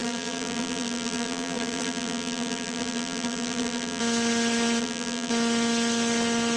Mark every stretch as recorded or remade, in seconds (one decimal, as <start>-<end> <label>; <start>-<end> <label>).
0.0-4.0 remade; 4.0-4.8 recorded; 4.8-5.3 remade; 5.3-6.6 recorded